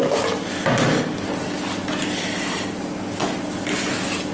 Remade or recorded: recorded